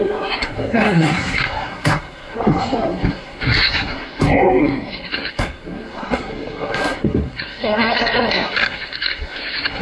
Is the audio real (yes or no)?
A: no